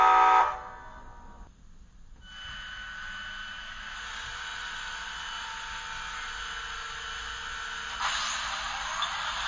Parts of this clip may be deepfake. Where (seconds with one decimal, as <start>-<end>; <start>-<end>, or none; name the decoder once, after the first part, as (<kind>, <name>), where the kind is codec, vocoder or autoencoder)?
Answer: none